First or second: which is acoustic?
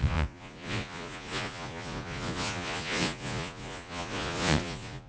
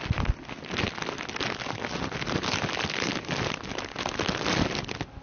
second